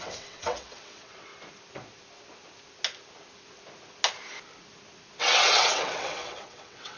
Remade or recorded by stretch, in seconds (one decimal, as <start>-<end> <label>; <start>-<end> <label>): 0.0-1.3 remade; 1.3-5.2 recorded; 5.2-7.0 remade